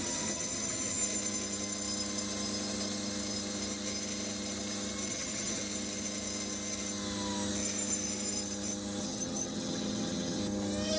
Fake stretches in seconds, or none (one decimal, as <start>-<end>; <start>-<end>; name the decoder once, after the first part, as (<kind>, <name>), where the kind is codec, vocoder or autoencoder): 0.0-1.0 (vocoder, HiFi-GAN); 5.1-5.6; 9.0-10.4